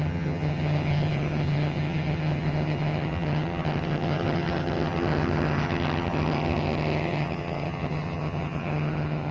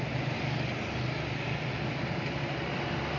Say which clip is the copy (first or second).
first